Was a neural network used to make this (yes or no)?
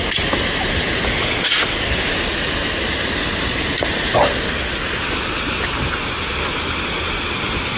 no